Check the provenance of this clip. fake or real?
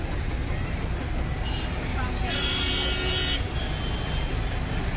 real